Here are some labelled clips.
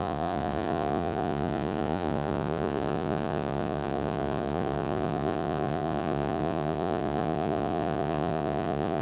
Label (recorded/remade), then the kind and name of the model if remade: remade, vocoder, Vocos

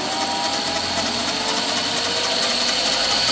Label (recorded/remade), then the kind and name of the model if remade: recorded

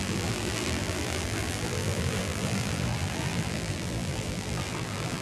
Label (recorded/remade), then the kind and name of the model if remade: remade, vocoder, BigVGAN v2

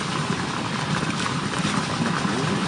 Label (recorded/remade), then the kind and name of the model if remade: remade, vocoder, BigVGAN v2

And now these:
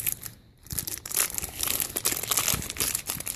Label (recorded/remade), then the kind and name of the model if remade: recorded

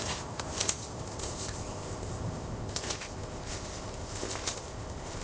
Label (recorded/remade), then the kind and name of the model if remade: remade, codec, ZipCodec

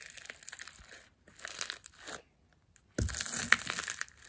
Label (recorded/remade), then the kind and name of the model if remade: recorded